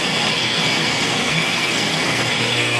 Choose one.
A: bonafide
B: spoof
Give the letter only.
B